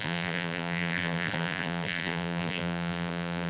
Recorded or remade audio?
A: remade